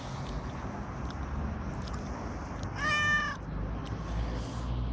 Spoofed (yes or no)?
no